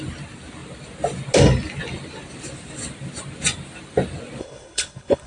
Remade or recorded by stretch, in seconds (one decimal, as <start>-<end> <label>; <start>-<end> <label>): 0.0-4.4 recorded; 4.4-5.3 remade